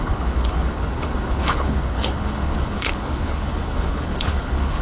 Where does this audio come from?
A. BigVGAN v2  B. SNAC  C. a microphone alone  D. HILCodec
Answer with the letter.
D